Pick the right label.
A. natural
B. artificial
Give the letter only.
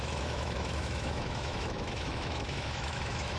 B